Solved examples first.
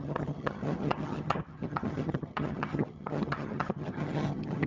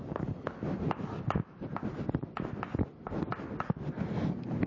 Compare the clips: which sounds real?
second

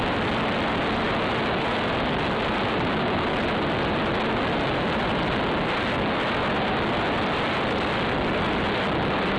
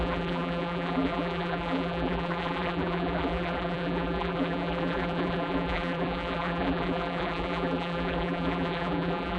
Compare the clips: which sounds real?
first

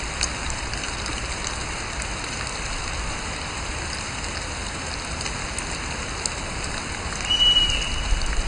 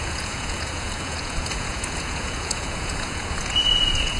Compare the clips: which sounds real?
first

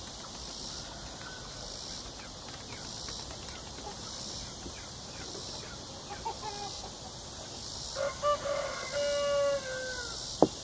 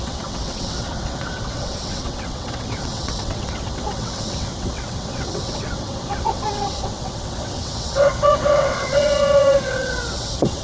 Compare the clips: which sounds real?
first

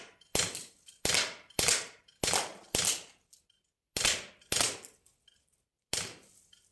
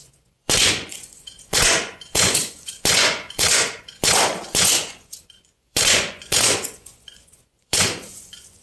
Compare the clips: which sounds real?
first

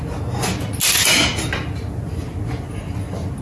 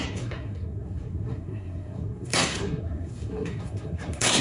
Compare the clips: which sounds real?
first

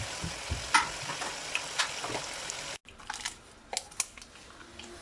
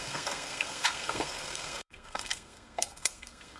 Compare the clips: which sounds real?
first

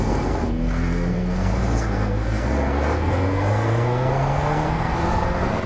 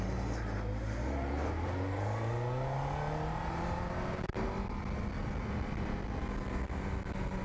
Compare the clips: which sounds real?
second